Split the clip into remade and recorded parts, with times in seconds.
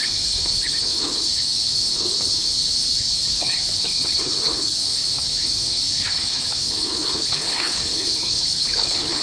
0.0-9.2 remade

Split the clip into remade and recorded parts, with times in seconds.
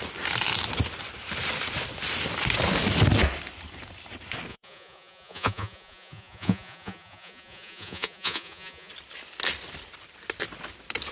0.0-4.5 recorded; 4.5-8.9 remade; 8.9-11.1 recorded